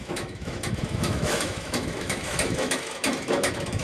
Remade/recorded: remade